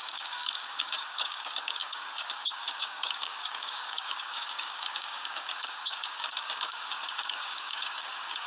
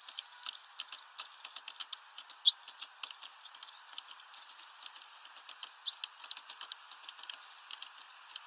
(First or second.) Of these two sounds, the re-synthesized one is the first